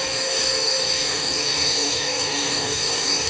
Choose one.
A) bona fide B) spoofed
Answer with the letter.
B